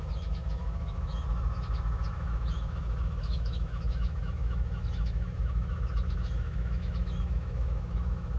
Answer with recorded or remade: remade